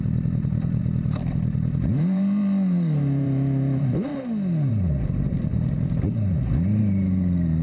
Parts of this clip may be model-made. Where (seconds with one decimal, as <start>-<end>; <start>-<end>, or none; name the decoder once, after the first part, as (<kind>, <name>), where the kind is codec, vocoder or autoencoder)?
0.0-0.8 (vocoder, BigVGAN v2); 1.9-4.1; 4.7-7.6